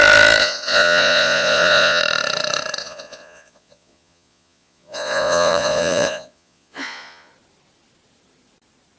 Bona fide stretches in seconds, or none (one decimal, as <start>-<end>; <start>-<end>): 0.0-0.4; 2.0-2.8; 7.3-9.0